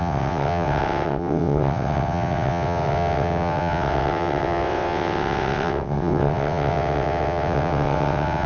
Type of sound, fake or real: fake